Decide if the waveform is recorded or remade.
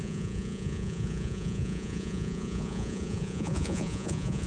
remade